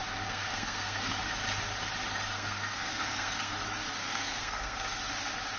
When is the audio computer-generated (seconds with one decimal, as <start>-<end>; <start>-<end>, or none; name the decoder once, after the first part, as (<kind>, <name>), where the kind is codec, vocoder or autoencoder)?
0.0-1.2 (codec, SNAC); 2.3-3.5; 4.0-5.0